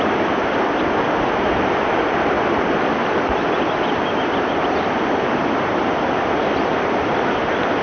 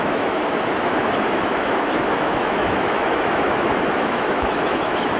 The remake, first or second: second